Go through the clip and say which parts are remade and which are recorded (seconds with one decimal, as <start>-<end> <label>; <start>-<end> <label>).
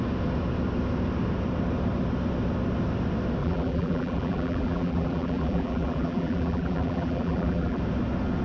0.0-3.4 recorded; 3.4-7.8 remade; 7.8-8.4 recorded